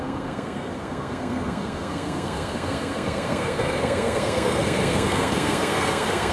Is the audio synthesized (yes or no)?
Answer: yes